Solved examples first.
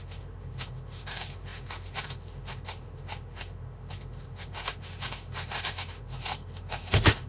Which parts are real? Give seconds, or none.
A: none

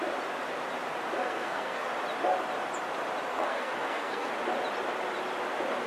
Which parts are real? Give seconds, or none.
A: 0.0-1.2; 1.9-3.3; 4.3-5.9

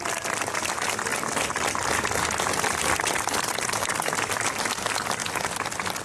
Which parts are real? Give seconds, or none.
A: 0.0-6.0

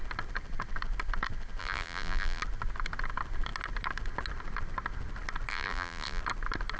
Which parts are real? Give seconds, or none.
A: 0.0-1.6; 2.4-5.5; 6.2-6.8

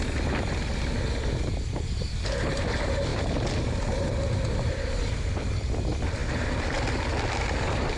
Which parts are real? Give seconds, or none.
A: 0.0-8.0

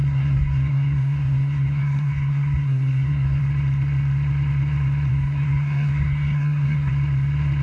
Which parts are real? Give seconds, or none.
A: 3.4-5.1; 6.9-7.6

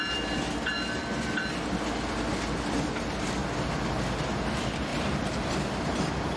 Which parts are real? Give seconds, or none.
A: 0.0-4.9; 5.5-6.4